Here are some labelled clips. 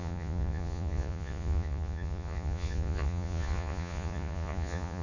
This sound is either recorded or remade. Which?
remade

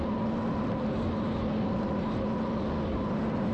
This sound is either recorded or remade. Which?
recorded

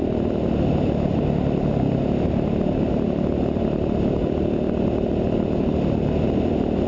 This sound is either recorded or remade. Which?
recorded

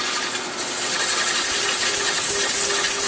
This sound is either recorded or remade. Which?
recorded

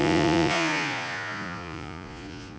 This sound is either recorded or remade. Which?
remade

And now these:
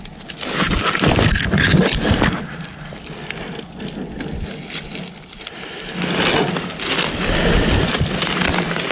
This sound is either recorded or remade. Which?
recorded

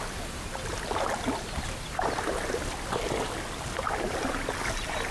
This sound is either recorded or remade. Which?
recorded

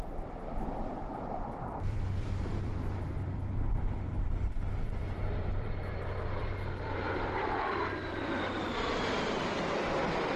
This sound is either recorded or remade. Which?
remade